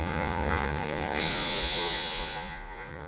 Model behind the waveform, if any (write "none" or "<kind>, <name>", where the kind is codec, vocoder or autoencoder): vocoder, Vocos